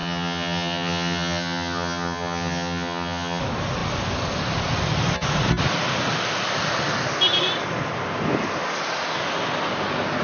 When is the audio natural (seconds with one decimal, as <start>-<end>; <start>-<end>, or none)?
3.4-10.2